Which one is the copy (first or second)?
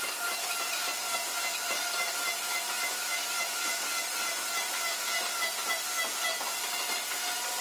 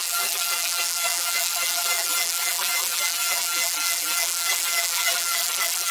second